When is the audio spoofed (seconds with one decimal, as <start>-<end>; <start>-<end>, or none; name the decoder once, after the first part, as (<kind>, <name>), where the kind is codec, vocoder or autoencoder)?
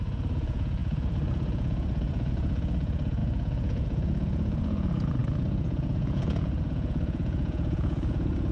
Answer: 0.0-8.5 (vocoder, Vocos)